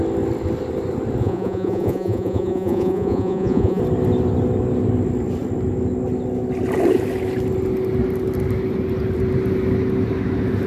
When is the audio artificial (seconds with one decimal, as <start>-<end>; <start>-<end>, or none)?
1.2-3.8